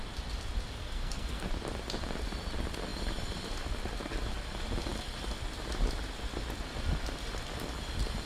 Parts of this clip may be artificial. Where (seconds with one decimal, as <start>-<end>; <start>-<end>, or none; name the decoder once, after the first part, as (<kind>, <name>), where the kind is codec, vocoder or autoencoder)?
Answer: 0.8-1.5 (codec, SNAC)